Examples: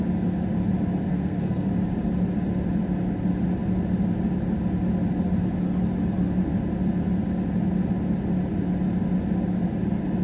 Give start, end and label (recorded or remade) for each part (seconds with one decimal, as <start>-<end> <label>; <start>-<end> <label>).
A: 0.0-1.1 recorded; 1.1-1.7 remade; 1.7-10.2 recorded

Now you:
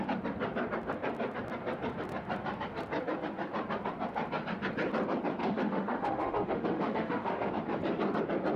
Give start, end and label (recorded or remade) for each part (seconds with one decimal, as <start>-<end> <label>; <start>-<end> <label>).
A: 0.0-5.4 recorded; 5.4-7.5 remade; 7.5-8.6 recorded

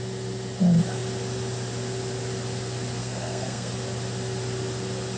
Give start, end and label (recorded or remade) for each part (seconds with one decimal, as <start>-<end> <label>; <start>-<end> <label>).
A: 0.0-3.0 recorded; 3.0-3.7 remade; 3.7-5.2 recorded

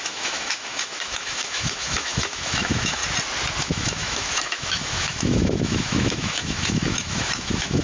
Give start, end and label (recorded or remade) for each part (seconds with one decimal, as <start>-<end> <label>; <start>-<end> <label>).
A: 0.0-3.0 remade; 3.0-3.6 recorded; 3.6-7.8 remade